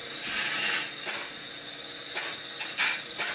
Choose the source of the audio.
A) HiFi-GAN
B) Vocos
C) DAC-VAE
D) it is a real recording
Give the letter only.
D